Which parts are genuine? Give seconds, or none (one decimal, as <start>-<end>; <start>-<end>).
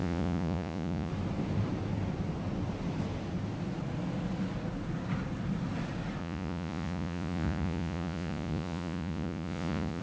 1.1-6.2